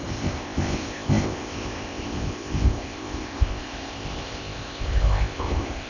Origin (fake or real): fake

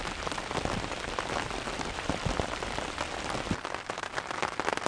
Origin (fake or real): real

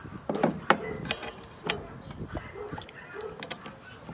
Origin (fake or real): real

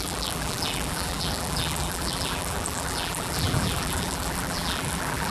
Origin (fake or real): fake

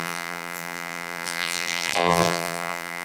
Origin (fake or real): fake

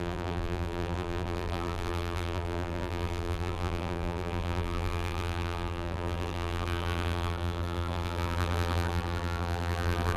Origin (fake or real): fake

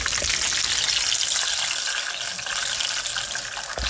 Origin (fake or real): real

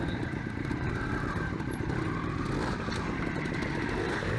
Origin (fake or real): fake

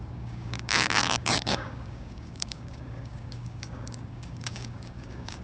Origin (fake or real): fake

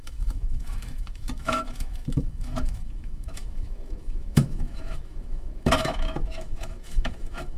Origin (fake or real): fake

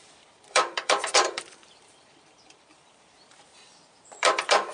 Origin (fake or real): fake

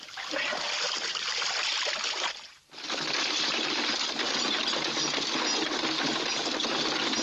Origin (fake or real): real